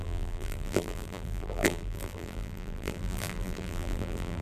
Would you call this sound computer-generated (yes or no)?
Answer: yes